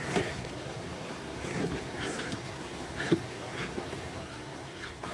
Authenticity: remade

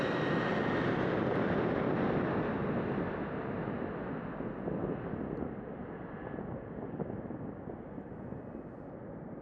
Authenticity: recorded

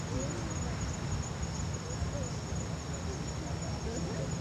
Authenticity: recorded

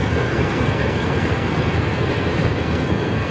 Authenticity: remade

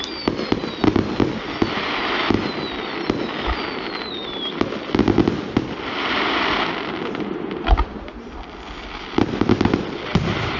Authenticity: recorded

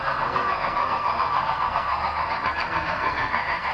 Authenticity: remade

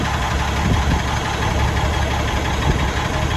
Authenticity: recorded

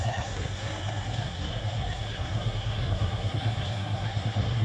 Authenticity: remade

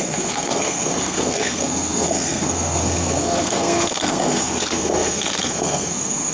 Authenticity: remade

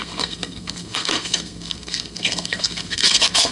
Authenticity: remade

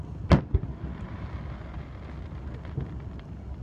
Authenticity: recorded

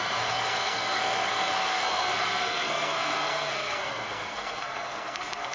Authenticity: remade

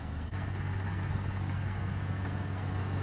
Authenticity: remade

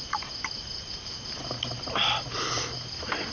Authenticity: recorded